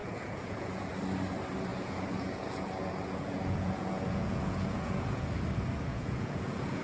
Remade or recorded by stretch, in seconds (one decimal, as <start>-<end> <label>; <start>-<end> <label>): 0.0-0.9 remade; 0.9-1.7 recorded; 1.7-5.3 remade; 5.3-5.9 recorded; 5.9-6.8 remade